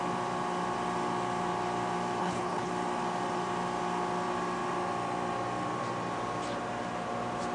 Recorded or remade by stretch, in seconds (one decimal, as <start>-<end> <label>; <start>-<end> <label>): 0.0-2.2 recorded; 2.2-2.7 remade; 2.7-7.5 recorded